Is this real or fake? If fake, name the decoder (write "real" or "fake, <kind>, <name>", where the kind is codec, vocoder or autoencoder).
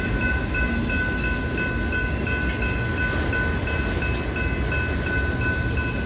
real